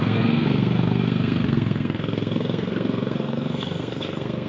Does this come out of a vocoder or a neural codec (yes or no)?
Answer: yes